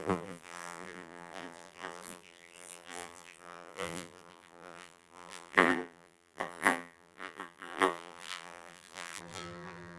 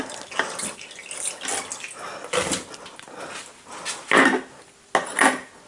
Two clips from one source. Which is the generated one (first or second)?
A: first